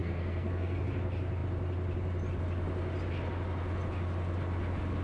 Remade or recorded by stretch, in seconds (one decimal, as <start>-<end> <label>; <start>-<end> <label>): 0.0-0.8 remade; 0.8-5.0 recorded